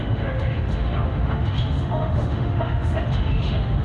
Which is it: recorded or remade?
remade